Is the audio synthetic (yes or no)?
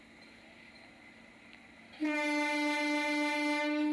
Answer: no